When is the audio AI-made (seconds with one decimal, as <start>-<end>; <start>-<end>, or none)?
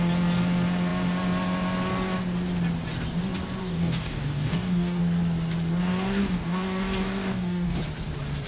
3.6-5.0; 5.8-7.8